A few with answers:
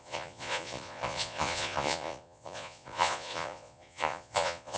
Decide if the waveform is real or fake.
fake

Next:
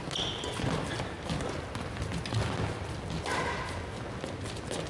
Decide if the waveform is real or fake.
real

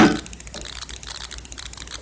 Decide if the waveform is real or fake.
real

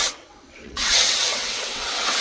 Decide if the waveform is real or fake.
fake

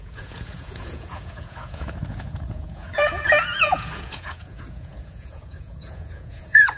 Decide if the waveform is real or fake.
fake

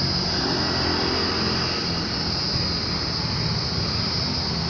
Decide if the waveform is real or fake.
real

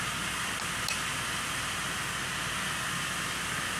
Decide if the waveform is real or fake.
real